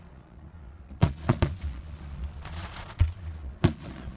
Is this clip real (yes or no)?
no